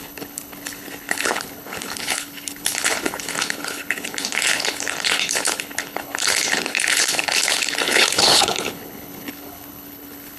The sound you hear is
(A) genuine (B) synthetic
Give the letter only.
B